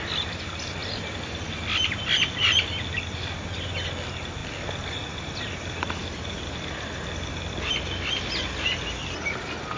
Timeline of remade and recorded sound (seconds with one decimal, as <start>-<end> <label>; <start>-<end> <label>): 0.0-9.8 recorded